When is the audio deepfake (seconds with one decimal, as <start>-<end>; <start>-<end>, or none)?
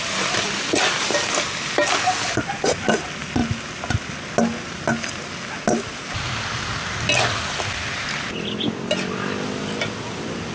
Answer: none